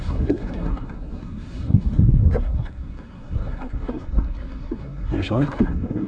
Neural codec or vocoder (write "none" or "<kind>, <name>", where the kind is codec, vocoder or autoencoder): codec, SNAC